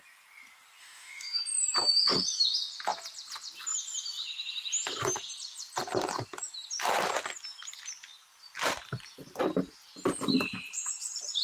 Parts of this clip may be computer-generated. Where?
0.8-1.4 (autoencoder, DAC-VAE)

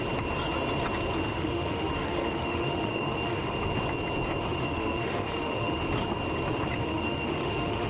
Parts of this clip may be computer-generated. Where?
1.2-3.6 (autoencoder, DAC-VAE); 4.4-5.8; 6.8-7.9

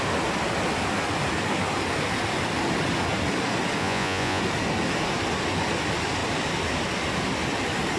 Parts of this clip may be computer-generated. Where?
3.8-4.4 (vocoder, Vocos)

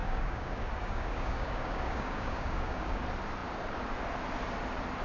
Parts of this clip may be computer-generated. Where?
0.0-3.0 (codec, DAC)